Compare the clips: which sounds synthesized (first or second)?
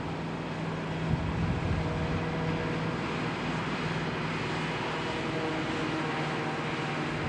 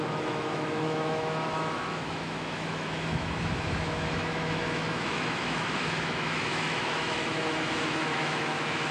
second